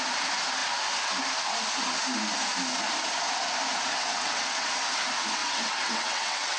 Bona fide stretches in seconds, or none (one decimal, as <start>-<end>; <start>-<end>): 0.0-3.9; 4.7-5.4